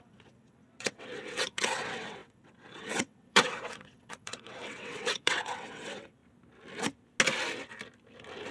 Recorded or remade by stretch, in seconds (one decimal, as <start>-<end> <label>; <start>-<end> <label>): 0.0-6.2 remade; 6.2-8.5 recorded